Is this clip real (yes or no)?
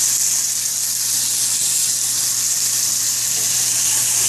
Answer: yes